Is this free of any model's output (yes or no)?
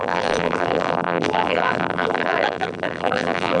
no